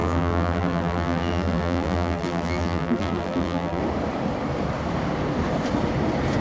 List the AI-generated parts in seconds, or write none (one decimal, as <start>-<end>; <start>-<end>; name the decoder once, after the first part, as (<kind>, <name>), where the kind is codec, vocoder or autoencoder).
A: 0.0-3.8 (vocoder, BigVGAN v2)